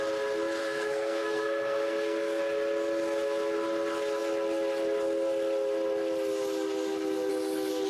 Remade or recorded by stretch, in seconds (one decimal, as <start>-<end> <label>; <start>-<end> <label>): 0.0-0.6 recorded; 0.6-2.4 remade; 2.4-7.9 recorded